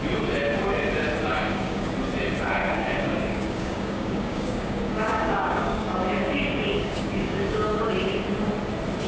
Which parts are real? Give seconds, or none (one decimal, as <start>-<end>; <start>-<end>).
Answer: 0.0-1.3; 1.9-2.6; 7.9-9.1